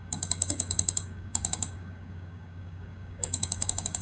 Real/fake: fake